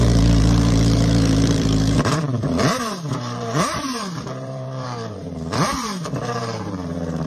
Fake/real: fake